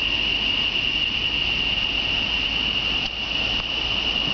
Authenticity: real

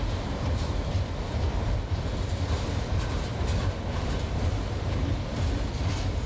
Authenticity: fake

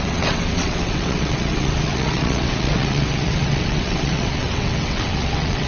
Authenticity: fake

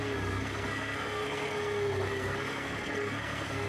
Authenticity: fake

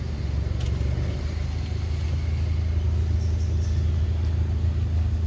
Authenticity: real